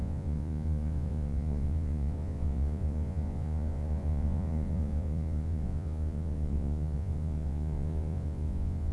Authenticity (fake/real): fake